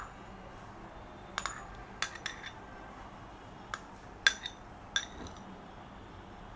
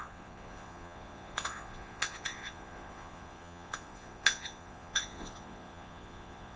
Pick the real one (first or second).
first